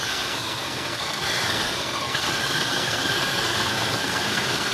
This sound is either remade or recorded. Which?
remade